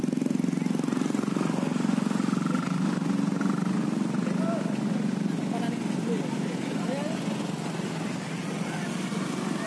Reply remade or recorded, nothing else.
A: recorded